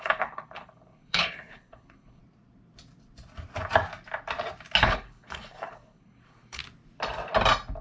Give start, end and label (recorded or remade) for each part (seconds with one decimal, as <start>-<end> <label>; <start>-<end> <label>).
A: 0.0-2.2 remade; 2.2-4.8 recorded; 4.8-6.6 remade; 6.6-7.8 recorded